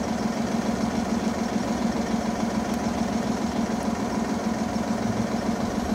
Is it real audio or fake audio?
real